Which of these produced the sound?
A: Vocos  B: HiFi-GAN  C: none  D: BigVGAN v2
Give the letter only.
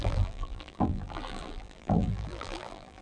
D